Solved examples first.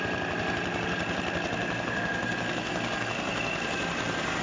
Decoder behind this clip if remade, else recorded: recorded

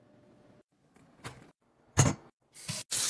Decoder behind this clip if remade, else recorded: recorded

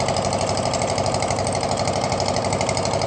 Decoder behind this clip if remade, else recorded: recorded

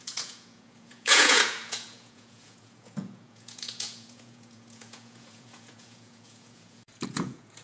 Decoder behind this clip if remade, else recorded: remade, vocoder, Vocos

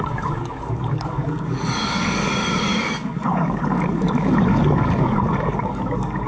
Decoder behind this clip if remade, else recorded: remade, codec, DAC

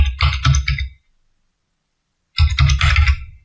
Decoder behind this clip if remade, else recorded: recorded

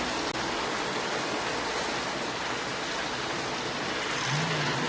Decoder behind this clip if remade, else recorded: recorded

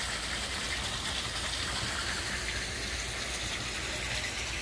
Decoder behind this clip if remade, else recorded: recorded